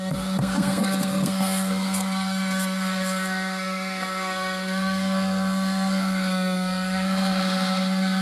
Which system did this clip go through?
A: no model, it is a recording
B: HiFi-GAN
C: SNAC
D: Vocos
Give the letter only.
C